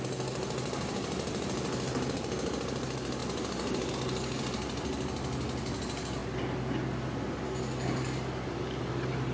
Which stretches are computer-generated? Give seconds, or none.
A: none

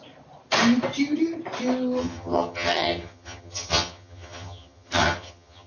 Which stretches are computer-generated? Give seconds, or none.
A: 2.0-5.7 (vocoder, HiFi-GAN)

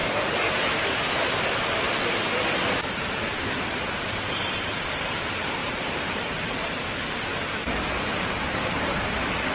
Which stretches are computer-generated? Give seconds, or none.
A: 1.2-2.3 (vocoder, BigVGAN v2); 3.2-5.6; 6.1-9.5